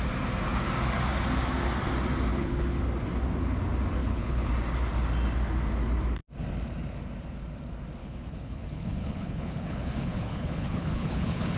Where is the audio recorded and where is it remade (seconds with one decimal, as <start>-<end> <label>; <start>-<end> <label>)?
0.0-2.3 recorded; 2.3-2.8 remade; 2.8-4.0 recorded; 4.0-4.5 remade; 4.5-8.0 recorded; 8.0-11.6 remade